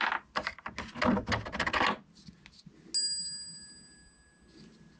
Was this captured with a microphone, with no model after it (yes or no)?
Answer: yes